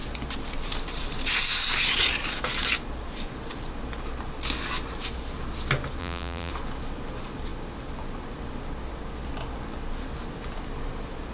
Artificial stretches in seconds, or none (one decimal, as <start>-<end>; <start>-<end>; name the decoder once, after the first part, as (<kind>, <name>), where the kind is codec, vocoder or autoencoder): 6.0-6.5 (vocoder, BigVGAN v2)